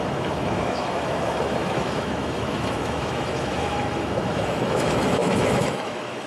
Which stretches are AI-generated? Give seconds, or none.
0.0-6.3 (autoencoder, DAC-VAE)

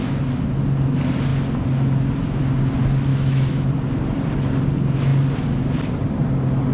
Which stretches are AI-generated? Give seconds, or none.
3.1-3.7 (autoencoder, DAC-VAE)